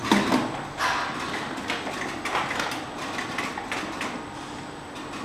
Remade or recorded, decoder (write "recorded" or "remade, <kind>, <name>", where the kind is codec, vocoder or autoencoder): recorded